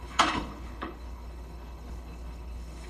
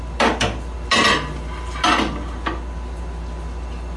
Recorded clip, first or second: second